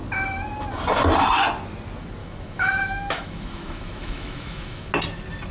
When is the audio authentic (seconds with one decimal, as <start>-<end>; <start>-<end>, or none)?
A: 0.0-2.2; 4.9-5.5